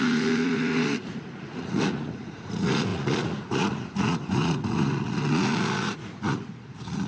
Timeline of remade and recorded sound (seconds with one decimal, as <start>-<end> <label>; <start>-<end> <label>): 0.0-7.1 remade